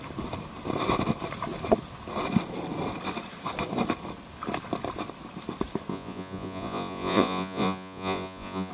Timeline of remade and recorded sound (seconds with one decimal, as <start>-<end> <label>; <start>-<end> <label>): 0.0-5.9 recorded; 5.9-8.7 remade